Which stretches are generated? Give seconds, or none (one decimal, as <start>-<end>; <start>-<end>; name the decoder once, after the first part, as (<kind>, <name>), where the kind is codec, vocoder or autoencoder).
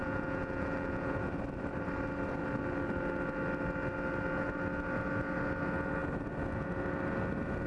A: 0.0-1.3 (vocoder, Vocos)